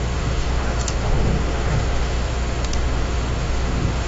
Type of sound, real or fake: fake